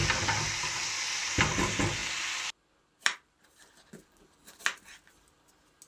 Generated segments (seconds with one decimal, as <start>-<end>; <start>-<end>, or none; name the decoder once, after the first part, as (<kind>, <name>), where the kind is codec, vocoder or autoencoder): 2.0-5.5 (vocoder, BigVGAN v2)